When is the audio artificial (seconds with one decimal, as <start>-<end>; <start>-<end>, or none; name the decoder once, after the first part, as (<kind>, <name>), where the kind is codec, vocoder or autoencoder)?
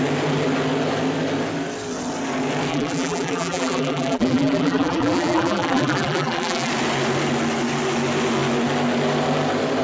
2.7-6.7 (vocoder, BigVGAN v2)